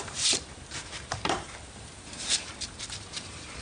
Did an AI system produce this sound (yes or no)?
yes